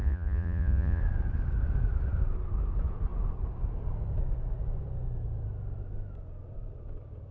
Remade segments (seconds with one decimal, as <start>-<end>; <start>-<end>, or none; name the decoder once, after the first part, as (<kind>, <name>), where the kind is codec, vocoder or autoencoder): 0.0-1.0 (vocoder, Vocos)